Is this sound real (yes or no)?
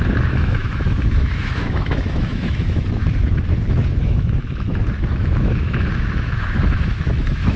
no